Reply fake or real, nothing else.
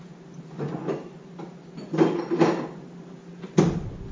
real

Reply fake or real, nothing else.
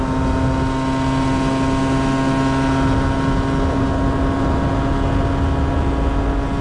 real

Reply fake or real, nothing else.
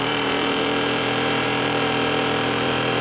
fake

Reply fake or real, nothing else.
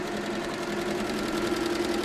real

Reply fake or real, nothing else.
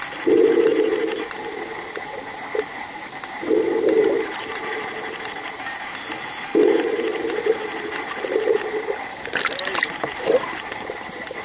real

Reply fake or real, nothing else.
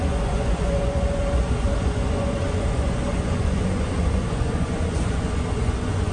fake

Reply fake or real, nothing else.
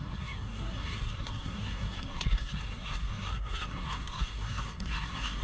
fake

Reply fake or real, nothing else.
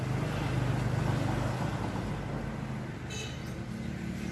real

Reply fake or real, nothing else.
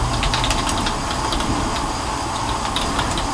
real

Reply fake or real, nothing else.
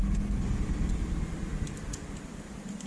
real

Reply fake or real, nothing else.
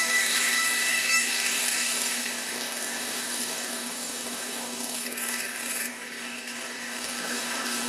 fake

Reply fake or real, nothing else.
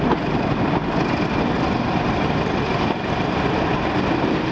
real